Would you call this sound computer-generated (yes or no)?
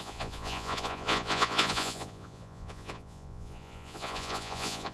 yes